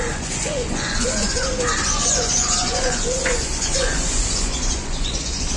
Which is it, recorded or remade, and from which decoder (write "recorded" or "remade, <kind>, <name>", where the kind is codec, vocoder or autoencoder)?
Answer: remade, vocoder, Vocos